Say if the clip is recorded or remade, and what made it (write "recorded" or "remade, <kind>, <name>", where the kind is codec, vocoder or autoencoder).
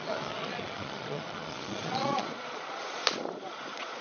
remade, vocoder, Vocos